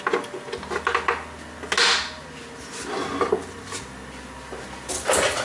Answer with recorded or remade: recorded